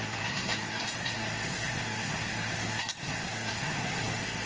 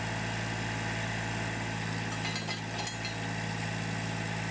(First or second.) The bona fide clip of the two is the second